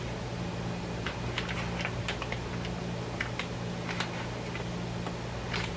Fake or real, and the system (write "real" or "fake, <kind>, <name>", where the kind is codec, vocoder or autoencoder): real